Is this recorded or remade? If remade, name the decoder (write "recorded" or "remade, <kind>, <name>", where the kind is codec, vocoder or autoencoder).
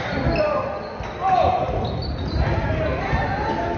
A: recorded